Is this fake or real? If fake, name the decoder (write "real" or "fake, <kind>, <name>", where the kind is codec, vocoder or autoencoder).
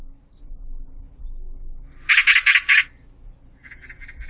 real